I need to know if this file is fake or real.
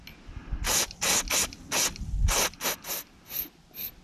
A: real